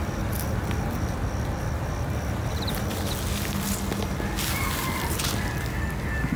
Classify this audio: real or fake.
real